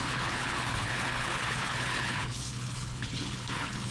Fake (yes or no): yes